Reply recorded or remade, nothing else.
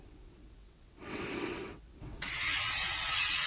remade